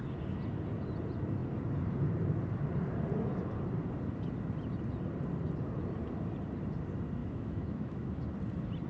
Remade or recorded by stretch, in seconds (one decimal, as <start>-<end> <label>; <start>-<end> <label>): 0.0-7.2 recorded; 7.2-8.1 remade; 8.1-8.9 recorded